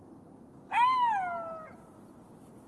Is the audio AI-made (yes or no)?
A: no